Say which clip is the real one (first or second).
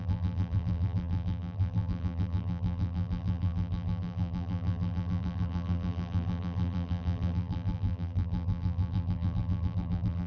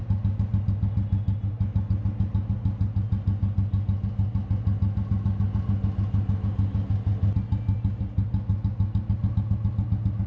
second